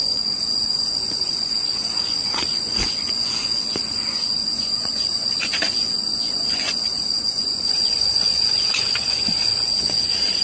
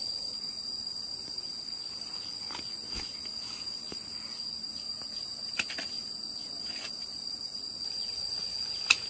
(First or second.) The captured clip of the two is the second